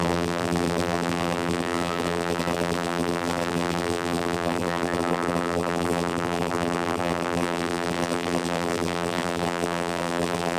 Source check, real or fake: fake